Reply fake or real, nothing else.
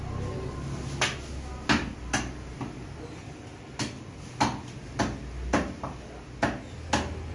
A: real